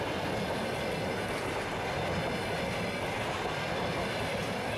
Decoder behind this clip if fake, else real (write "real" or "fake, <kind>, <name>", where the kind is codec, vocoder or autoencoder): real